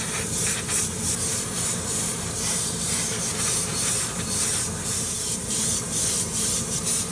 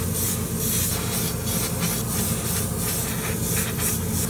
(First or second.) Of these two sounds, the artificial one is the first